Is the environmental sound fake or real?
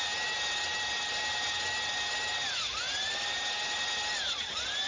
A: real